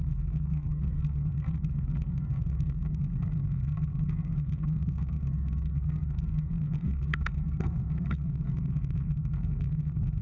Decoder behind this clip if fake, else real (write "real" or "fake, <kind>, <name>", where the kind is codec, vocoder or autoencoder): fake, codec, SNAC